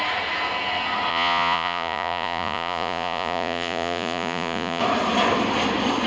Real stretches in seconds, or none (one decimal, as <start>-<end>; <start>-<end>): 0.0-1.1; 4.8-6.1